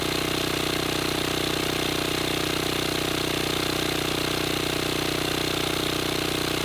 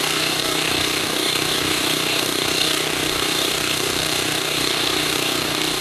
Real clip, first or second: first